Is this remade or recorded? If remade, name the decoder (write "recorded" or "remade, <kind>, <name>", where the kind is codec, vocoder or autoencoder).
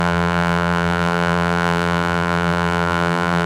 remade, vocoder, BigVGAN v2